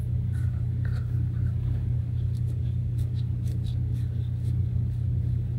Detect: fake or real fake